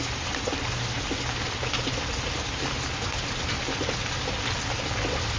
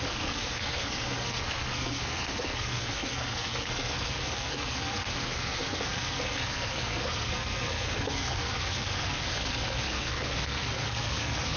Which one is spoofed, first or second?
second